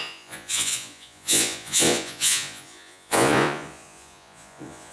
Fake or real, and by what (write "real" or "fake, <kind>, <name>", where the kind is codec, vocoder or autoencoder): fake, vocoder, Vocos